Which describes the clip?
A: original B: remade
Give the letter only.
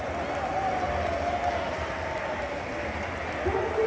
A